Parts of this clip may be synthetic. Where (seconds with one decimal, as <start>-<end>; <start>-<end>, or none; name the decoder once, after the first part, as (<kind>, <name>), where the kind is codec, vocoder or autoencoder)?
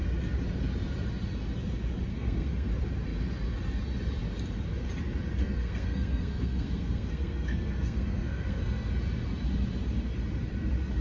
2.1-2.7 (codec, SNAC); 5.4-8.9